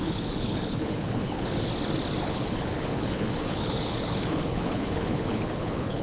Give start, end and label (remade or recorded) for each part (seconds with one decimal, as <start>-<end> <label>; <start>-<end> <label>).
0.0-1.7 remade; 1.7-2.2 recorded; 2.2-6.0 remade